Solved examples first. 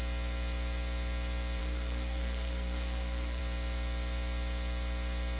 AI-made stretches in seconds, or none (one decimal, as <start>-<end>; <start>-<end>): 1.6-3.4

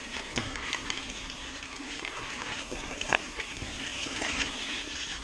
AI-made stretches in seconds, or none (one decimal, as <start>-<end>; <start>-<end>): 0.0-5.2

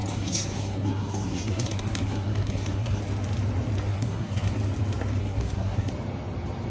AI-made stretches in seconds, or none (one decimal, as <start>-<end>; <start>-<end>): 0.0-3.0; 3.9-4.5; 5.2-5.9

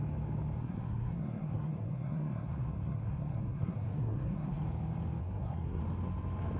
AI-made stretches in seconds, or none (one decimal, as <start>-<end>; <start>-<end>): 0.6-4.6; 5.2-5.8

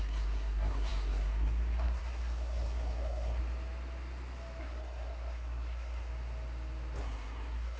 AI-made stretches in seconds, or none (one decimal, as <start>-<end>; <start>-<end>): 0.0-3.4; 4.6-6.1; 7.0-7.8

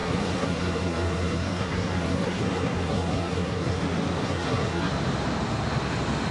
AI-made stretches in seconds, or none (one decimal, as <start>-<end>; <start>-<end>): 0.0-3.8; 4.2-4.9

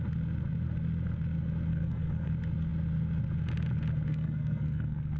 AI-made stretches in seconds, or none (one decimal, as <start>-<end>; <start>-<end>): 1.7-2.3; 4.1-5.2

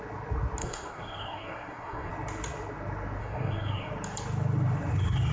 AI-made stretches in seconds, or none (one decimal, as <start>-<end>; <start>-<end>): 0.6-2.1; 3.2-3.9